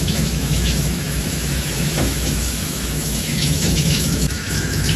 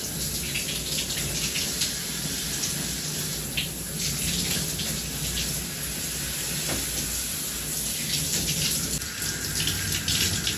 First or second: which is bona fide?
second